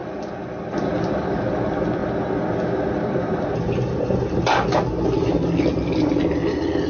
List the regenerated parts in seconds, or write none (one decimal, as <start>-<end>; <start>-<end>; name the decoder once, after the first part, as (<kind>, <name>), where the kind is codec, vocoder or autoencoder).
none